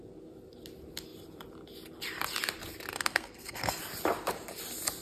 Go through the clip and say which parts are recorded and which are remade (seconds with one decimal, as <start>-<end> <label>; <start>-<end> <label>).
0.0-2.9 recorded; 2.9-3.8 remade; 3.8-5.0 recorded